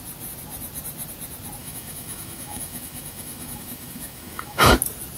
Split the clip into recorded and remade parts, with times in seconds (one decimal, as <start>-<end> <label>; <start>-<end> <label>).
0.0-1.6 recorded; 1.6-4.7 remade; 4.7-5.2 recorded